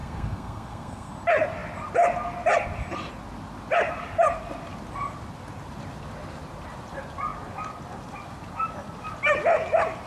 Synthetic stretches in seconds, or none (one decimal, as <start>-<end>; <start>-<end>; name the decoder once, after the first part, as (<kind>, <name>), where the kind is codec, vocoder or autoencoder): 0.0-1.1 (codec, SNAC)